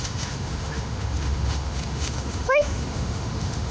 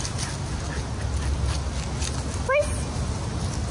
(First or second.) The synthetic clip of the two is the first